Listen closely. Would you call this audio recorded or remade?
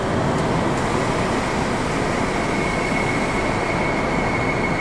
recorded